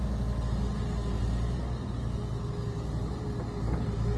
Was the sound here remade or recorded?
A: recorded